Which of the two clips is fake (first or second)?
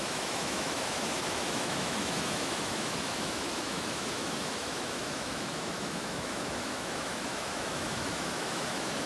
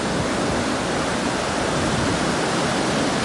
first